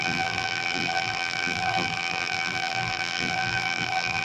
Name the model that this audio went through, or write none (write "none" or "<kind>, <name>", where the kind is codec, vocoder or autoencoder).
vocoder, BigVGAN v2